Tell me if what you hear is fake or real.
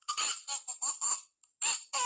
real